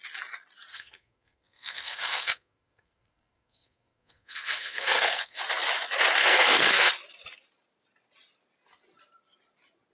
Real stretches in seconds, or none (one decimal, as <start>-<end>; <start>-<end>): 0.0-0.7; 5.4-6.2; 6.9-9.9

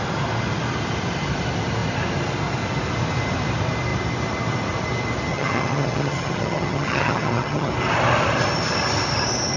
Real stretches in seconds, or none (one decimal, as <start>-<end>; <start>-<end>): 0.0-5.3; 7.7-9.6

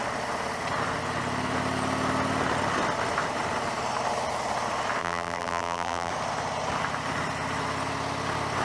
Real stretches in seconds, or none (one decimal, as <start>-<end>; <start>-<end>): 0.0-5.0; 6.1-8.6

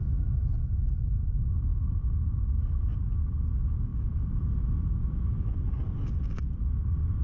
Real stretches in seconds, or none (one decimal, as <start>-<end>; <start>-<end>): 0.0-7.2

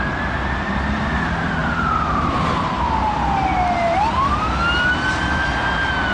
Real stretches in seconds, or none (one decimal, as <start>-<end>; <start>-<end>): 0.0-1.6; 3.1-6.1